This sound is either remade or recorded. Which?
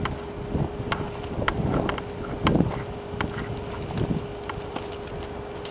recorded